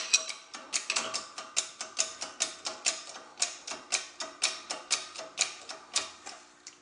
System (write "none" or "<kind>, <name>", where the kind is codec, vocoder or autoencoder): none